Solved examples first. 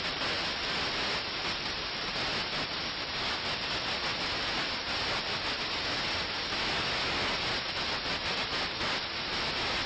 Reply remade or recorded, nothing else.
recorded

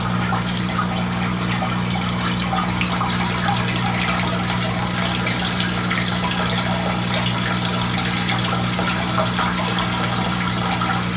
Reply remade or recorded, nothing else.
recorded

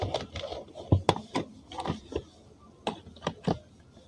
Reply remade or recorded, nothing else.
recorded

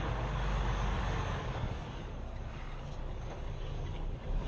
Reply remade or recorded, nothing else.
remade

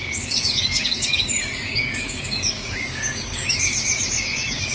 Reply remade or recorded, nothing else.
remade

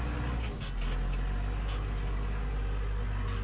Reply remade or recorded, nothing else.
recorded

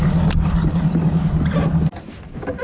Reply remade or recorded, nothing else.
recorded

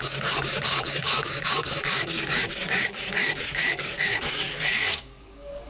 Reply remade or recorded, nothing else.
remade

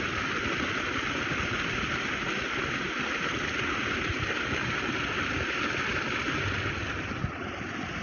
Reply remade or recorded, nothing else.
recorded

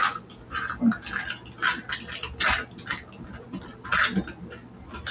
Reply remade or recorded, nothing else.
recorded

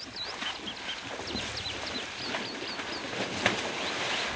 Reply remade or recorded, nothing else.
recorded